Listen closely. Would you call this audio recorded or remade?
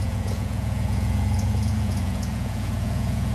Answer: remade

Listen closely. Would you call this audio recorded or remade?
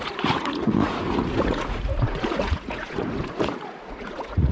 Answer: remade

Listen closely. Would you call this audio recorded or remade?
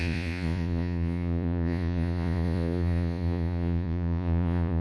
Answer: remade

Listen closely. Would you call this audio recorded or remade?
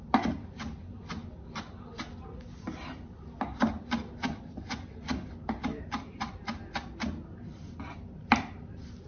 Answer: recorded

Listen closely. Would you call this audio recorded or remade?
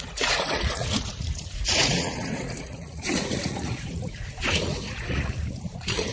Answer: remade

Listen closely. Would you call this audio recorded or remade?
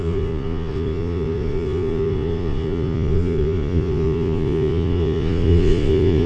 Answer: remade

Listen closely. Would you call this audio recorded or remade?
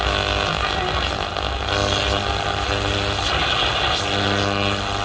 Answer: recorded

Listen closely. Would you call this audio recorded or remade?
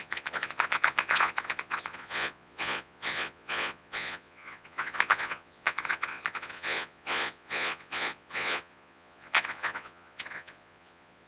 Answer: remade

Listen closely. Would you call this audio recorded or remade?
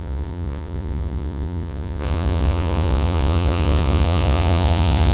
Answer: remade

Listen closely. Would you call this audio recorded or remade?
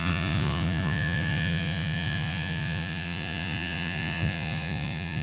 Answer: remade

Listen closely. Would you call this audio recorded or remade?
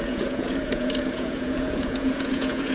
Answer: remade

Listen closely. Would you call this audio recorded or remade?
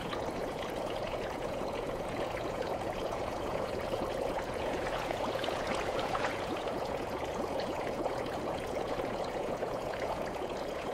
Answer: remade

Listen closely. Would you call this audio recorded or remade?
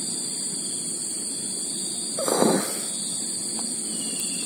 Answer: recorded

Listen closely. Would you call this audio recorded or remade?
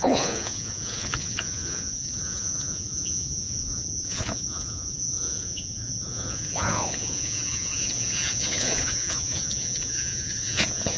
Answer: remade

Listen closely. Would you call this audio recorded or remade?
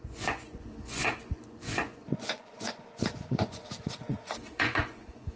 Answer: remade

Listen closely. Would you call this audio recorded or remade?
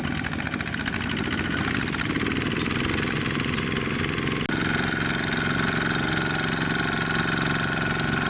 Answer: recorded